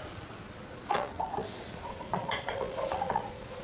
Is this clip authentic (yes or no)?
no